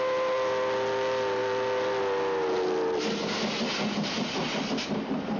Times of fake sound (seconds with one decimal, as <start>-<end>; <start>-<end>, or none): none